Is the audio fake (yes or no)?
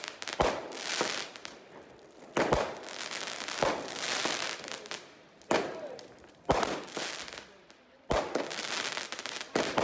no